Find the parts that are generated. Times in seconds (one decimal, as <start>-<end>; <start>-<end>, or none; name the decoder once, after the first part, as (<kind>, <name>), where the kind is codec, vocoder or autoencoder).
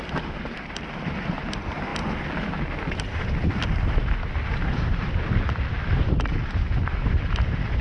0.0-1.9 (vocoder, BigVGAN v2); 2.6-7.8